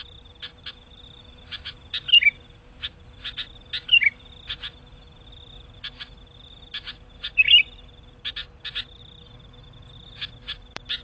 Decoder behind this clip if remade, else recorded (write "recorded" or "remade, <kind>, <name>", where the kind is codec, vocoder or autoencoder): recorded